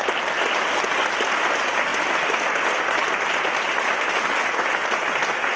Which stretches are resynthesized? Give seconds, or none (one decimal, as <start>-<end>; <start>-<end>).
none